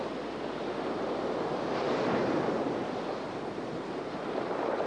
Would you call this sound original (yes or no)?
yes